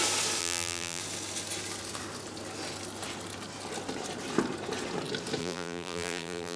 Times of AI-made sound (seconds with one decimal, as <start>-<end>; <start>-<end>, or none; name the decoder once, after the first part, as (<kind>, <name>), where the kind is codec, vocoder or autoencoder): 0.4-1.0 (vocoder, BigVGAN v2); 5.4-6.6